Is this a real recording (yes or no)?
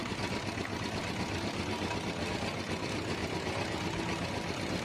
yes